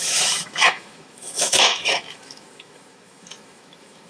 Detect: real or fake fake